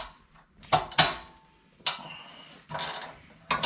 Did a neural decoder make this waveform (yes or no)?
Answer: no